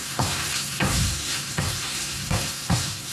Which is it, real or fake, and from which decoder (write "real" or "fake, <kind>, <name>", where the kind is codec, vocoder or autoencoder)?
fake, codec, SNAC